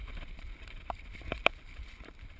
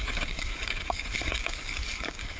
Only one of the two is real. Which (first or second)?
first